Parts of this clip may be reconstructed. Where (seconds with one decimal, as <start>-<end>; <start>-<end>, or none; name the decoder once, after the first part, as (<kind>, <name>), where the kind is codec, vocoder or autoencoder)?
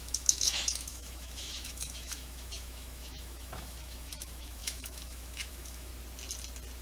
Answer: 0.0-5.9 (autoencoder, DAC-VAE)